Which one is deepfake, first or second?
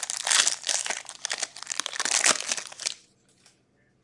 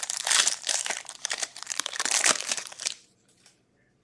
second